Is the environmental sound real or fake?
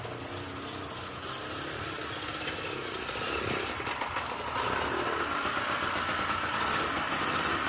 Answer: real